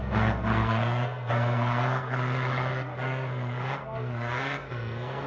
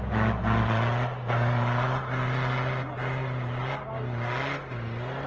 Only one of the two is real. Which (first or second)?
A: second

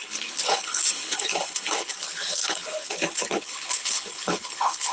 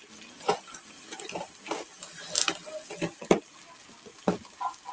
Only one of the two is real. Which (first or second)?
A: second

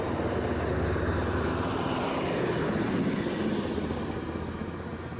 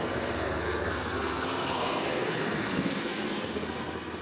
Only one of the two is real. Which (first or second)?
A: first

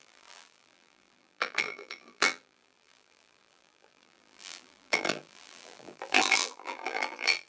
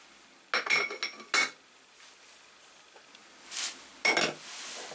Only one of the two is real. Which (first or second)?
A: second